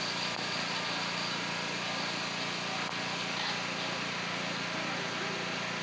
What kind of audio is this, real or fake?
real